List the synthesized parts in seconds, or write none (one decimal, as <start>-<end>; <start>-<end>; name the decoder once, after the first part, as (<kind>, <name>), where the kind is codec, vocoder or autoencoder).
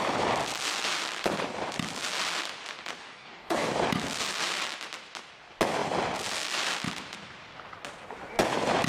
3.0-3.7 (codec, DAC)